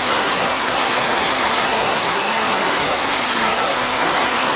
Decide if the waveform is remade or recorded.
remade